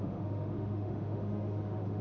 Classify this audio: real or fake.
fake